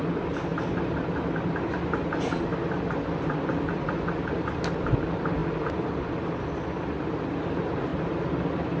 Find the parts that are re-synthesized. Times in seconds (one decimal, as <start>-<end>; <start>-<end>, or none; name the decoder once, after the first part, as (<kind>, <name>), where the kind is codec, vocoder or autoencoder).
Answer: none